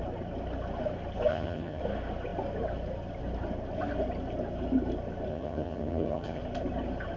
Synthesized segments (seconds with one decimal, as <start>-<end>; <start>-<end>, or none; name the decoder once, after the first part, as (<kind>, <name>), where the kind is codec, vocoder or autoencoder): 1.3-1.8 (vocoder, HiFi-GAN); 5.3-6.4